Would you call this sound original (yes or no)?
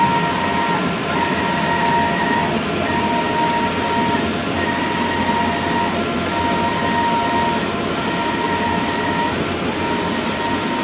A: yes